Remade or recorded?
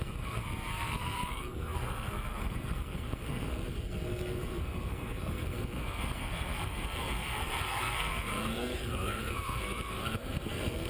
remade